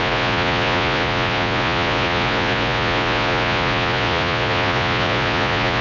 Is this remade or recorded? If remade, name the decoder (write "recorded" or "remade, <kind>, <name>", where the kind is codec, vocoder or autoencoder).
remade, vocoder, Vocos